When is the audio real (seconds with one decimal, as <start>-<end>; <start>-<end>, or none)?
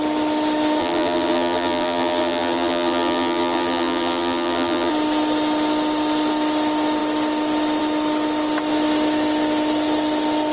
0.0-0.8; 4.9-10.5